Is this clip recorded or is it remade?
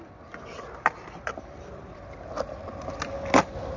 recorded